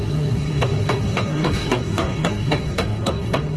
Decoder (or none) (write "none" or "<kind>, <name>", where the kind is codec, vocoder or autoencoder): codec, SNAC